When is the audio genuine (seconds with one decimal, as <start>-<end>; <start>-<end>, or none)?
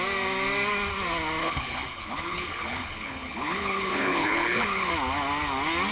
0.0-1.4; 4.9-5.9